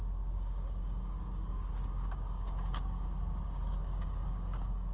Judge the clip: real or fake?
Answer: fake